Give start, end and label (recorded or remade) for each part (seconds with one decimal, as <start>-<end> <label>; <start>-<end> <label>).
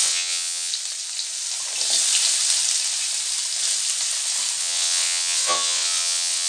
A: 0.0-0.7 remade; 0.7-4.6 recorded; 4.6-6.5 remade